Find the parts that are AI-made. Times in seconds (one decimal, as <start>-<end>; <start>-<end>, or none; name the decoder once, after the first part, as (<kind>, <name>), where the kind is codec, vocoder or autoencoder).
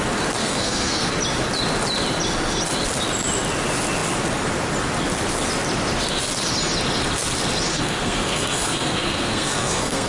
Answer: 0.4-1.1 (codec, SNAC); 7.7-10.1